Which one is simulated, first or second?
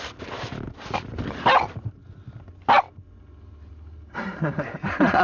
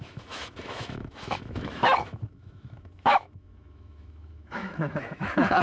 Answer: second